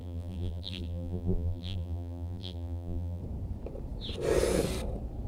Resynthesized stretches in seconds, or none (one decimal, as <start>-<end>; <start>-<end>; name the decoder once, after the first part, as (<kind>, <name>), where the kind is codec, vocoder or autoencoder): 0.0-3.2 (vocoder, BigVGAN v2)